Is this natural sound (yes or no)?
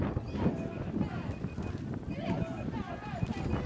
yes